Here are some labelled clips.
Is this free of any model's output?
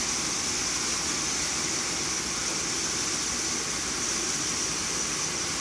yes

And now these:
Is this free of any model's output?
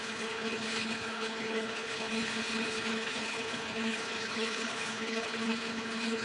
no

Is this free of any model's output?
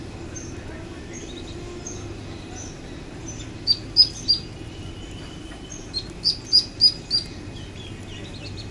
yes